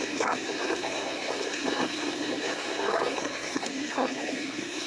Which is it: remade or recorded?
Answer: remade